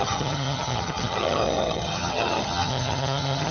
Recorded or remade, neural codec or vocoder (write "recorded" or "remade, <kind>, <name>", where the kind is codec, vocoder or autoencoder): remade, vocoder, HiFi-GAN